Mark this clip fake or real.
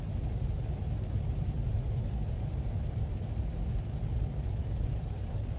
real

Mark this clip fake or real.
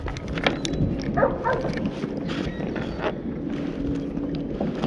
real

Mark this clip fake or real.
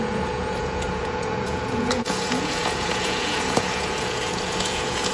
fake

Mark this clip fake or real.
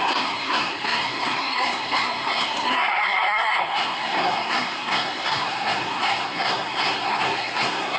fake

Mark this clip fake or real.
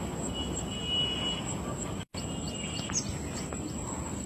real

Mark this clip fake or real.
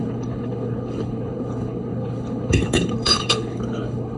fake